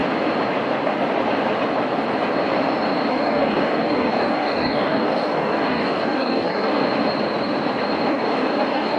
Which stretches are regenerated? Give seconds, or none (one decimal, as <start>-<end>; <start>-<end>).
3.1-6.8; 8.1-9.0